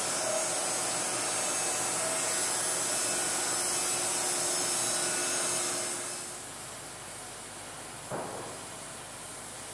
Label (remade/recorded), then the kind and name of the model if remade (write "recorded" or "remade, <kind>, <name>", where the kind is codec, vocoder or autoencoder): recorded